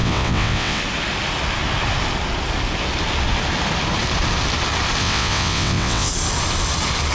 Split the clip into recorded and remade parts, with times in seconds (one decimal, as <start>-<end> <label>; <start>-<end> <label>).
0.0-0.8 remade; 0.8-5.0 recorded; 5.0-6.1 remade; 6.1-7.1 recorded